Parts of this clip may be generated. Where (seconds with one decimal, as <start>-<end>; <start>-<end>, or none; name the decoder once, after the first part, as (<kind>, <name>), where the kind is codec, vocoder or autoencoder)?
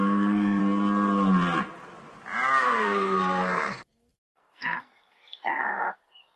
0.0-0.6 (codec, SNAC); 2.6-6.4